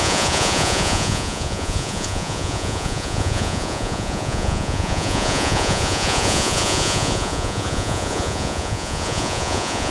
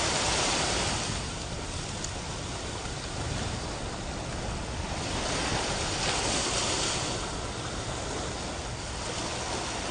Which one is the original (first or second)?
second